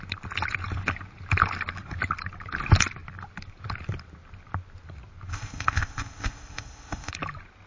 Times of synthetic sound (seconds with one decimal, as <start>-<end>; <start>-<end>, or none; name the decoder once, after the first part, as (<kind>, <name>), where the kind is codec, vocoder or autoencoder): 5.3-7.1 (codec, ZipCodec)